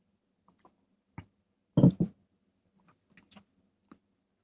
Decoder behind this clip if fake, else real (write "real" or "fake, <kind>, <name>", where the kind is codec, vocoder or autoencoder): real